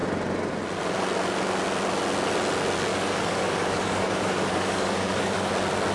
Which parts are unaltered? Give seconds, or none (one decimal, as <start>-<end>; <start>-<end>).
0.0-2.9; 5.5-5.9